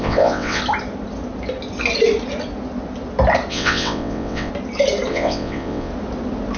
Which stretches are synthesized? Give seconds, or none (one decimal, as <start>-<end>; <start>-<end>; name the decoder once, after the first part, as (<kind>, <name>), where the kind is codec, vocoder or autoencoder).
0.0-0.6 (vocoder, WaveNeXt); 3.5-4.5; 5.1-5.9